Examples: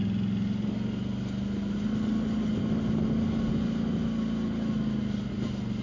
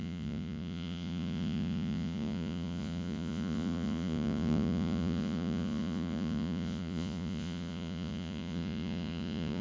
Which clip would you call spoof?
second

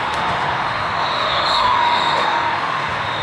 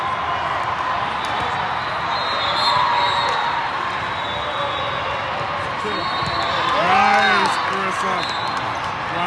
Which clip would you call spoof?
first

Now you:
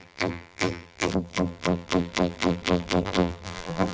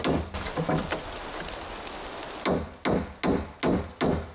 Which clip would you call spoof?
first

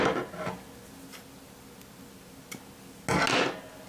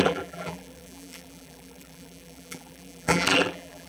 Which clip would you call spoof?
second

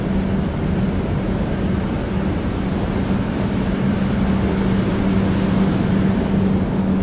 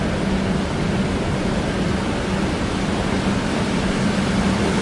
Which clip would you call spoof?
second